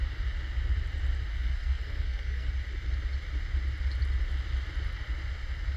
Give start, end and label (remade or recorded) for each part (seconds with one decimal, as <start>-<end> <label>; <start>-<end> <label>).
0.0-1.3 recorded; 1.3-2.5 remade; 2.5-5.8 recorded